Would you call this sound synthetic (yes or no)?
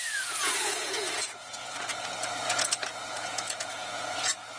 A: yes